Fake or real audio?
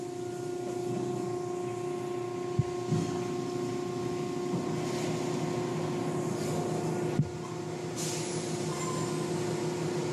real